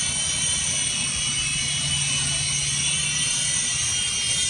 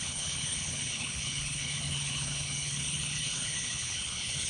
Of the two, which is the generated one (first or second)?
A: second